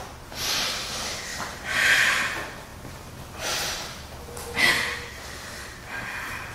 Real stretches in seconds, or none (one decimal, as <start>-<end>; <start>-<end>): 0.0-6.5